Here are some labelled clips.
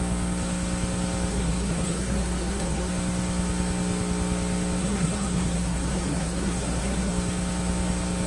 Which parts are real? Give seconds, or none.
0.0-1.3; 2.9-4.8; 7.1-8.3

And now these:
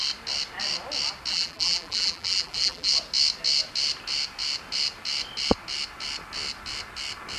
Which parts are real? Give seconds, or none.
0.0-1.3; 2.9-7.4

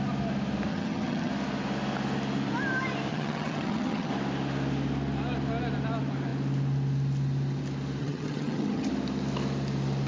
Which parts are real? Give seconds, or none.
0.0-0.7; 1.3-3.1; 4.1-8.0; 8.9-10.1

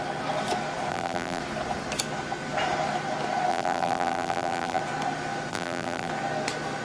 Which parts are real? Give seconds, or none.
0.0-0.9; 1.4-3.5; 4.8-5.5; 6.1-6.8